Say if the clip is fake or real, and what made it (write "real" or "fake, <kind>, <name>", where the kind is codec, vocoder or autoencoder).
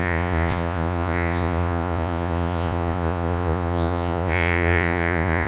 fake, vocoder, Vocos